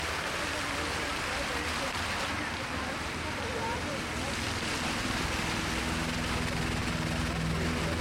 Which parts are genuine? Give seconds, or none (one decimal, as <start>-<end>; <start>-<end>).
0.0-1.1; 5.6-8.0

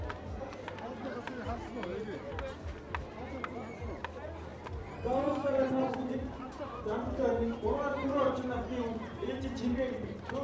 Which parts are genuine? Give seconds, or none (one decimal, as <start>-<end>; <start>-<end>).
0.0-10.4

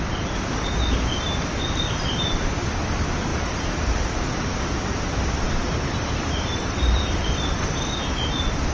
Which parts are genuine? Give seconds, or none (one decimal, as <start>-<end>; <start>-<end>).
0.0-3.3; 7.9-8.7

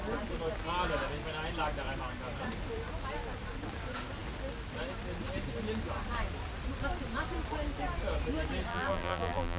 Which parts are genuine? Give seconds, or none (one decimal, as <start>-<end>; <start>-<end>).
0.0-8.7

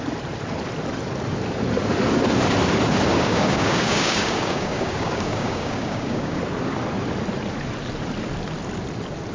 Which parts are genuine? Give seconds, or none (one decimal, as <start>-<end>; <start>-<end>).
0.0-3.1; 6.4-9.3